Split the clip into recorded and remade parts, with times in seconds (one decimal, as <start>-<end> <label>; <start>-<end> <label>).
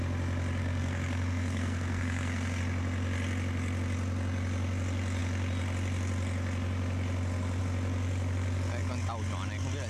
0.0-0.6 recorded; 0.6-2.6 remade; 2.6-9.9 recorded